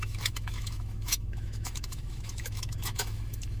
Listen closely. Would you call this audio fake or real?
fake